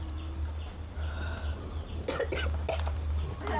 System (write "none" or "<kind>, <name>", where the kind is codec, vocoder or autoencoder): none